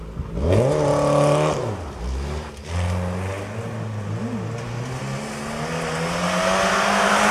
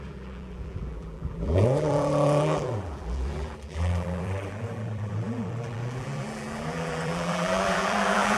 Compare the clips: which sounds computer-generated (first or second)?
second